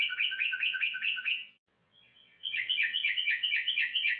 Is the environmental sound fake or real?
fake